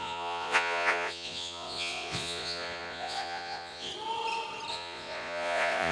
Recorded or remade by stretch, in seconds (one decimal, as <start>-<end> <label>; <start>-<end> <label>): 0.0-3.9 remade; 3.9-4.7 recorded; 4.7-5.9 remade